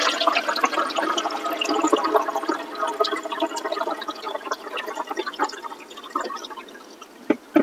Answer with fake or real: real